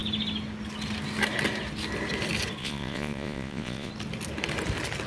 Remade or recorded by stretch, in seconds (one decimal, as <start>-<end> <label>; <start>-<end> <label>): 0.0-2.6 recorded; 2.6-3.9 remade; 3.9-5.1 recorded